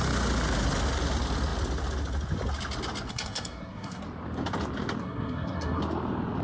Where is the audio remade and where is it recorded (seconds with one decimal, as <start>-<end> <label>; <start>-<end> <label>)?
0.0-3.1 recorded; 3.1-4.0 remade; 4.0-5.0 recorded; 5.0-5.8 remade; 5.8-6.4 recorded